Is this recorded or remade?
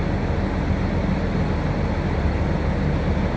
recorded